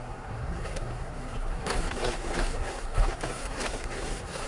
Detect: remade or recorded remade